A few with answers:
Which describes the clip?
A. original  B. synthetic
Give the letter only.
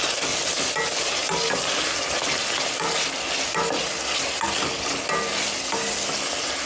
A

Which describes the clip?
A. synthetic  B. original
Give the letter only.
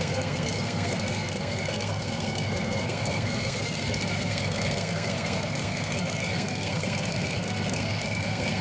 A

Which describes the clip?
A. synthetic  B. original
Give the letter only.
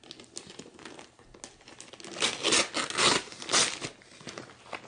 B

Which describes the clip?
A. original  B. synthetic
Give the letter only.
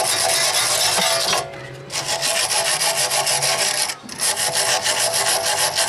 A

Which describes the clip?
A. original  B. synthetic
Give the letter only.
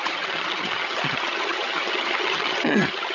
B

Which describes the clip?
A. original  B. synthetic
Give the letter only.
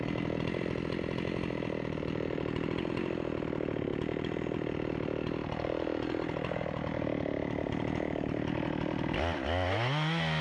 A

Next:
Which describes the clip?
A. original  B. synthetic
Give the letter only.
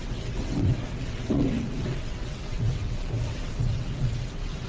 B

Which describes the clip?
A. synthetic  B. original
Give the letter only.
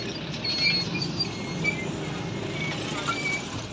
B